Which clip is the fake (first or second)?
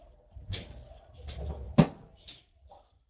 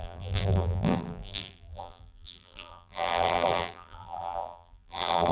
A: second